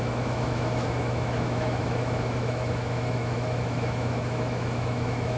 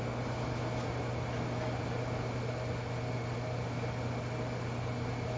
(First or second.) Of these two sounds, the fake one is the first